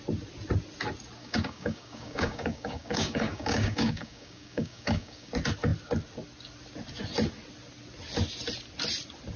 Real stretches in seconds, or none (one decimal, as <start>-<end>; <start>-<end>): 0.0-1.2; 5.3-9.4